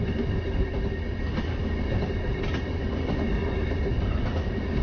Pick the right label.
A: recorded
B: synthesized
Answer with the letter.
A